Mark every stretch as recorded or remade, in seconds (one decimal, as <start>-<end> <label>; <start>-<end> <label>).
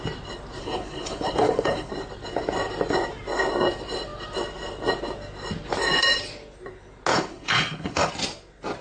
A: 0.0-0.6 recorded; 0.6-1.9 remade; 1.9-7.1 recorded; 7.1-8.1 remade; 8.1-8.8 recorded